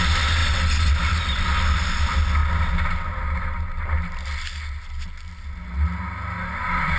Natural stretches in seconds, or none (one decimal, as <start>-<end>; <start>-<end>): 0.0-7.0

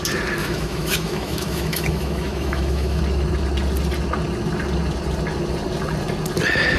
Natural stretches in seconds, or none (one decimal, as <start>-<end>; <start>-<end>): 0.0-0.4; 3.0-6.8

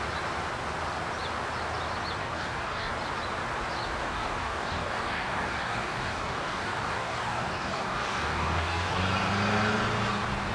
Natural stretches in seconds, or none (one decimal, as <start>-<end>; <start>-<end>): 0.0-2.2; 2.9-4.0; 9.0-10.5

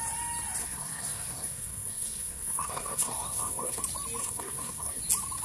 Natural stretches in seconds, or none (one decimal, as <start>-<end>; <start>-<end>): 0.0-0.6; 3.8-4.2; 5.0-5.4